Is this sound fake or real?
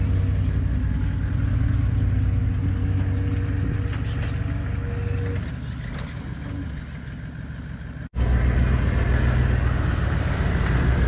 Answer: real